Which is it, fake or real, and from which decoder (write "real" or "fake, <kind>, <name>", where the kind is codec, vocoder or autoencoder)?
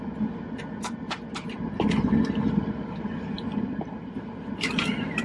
real